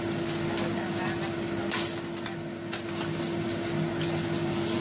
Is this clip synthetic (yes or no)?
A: no